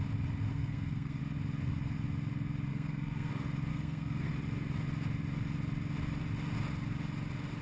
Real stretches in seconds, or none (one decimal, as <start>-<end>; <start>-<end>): 0.0-0.5; 1.2-2.7; 3.3-3.7; 4.3-7.6